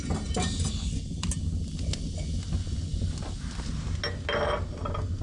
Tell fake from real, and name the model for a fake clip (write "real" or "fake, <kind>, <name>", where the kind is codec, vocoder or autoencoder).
real